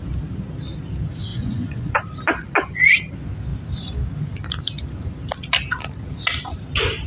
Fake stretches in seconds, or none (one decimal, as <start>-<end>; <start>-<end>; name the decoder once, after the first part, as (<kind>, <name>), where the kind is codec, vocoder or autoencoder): 1.3-1.9 (vocoder, Vocos)